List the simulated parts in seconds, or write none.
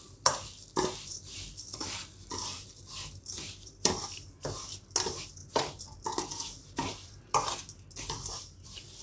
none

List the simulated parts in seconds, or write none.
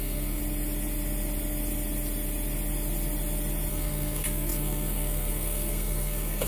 0.0-0.4 (codec, SNAC); 3.7-6.5